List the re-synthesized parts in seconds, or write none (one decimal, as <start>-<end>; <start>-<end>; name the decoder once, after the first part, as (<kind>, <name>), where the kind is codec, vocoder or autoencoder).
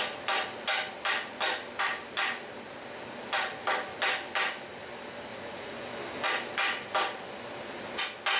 5.3-5.9 (vocoder, Vocos)